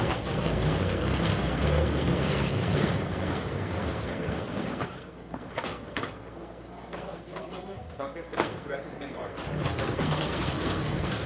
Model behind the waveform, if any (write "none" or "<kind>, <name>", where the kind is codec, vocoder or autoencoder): codec, SNAC